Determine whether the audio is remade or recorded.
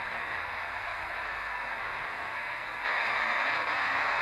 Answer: remade